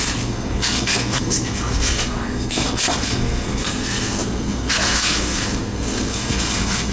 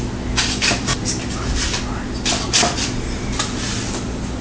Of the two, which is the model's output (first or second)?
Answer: first